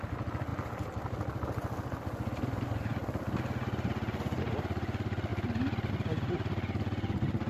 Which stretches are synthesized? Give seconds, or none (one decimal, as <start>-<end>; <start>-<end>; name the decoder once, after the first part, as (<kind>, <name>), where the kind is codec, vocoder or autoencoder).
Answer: none